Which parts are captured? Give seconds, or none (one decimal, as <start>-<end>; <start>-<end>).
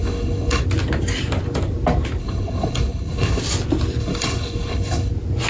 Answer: 0.6-2.2; 3.4-4.0; 5.1-5.5